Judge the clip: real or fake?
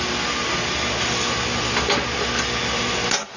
real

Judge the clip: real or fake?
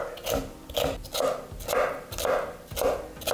real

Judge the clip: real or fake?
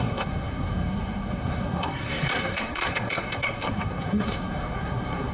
fake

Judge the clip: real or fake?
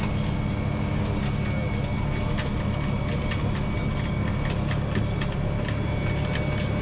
real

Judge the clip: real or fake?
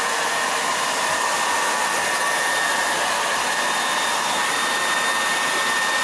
real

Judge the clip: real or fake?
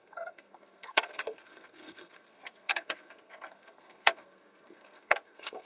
fake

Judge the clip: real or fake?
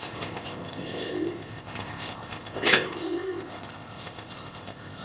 fake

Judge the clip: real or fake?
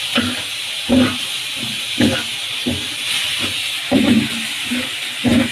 fake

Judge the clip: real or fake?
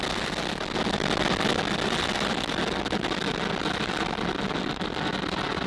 real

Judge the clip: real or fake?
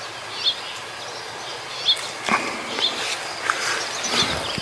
real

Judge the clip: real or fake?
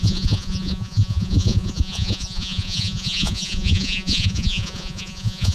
fake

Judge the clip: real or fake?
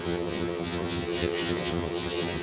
fake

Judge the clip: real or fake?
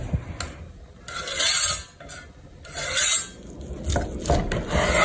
real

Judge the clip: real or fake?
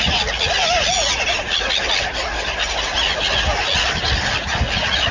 real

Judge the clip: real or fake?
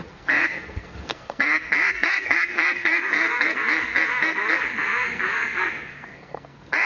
fake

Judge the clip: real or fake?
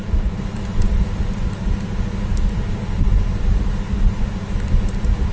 real